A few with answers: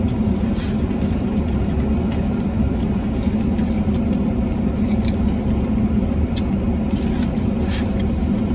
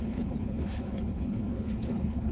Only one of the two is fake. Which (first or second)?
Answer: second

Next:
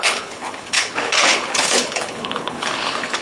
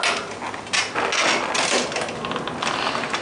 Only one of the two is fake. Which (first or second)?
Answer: first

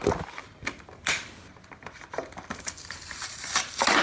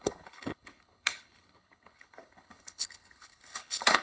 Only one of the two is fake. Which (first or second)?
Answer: second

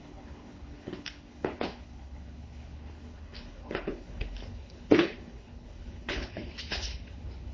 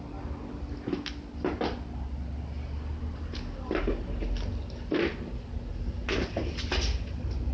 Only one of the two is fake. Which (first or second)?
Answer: first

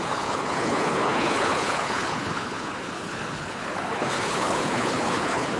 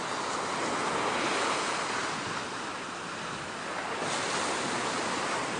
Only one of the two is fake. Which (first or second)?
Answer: first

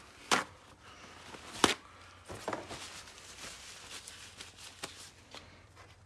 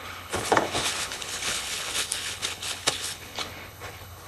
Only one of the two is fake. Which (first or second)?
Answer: second